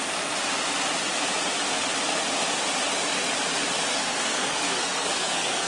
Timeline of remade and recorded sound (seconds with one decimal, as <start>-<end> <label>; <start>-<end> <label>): 0.0-3.9 recorded; 3.9-5.7 remade